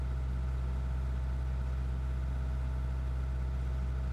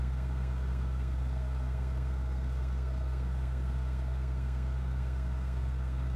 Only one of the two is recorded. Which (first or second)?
first